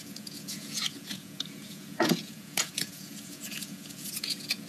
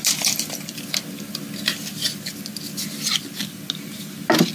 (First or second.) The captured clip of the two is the second